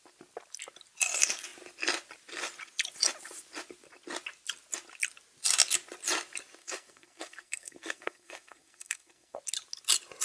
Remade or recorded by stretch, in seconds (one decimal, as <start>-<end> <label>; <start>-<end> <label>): 0.0-6.6 recorded; 6.6-9.4 remade; 9.4-10.2 recorded